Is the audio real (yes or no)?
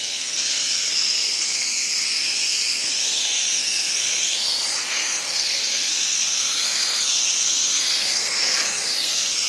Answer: no